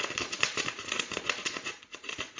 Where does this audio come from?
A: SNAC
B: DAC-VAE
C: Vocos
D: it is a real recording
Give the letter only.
C